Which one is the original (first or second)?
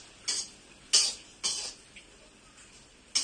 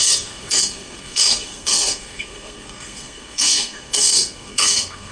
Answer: first